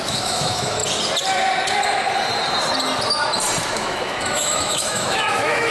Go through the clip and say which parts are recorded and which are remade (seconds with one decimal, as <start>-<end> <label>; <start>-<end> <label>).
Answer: 0.0-0.8 remade; 0.8-3.6 recorded; 3.6-5.7 remade